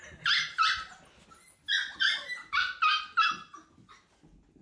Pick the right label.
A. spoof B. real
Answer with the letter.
B